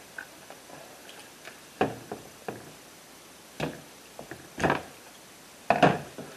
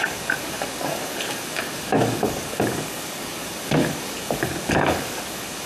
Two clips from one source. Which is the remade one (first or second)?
second